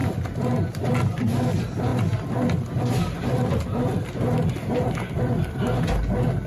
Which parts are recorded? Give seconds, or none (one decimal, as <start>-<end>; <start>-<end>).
0.0-6.5